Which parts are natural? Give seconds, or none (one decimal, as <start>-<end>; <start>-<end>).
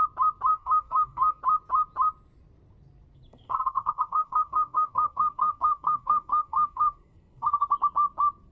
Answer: 0.0-0.5; 1.4-3.3; 7.7-8.5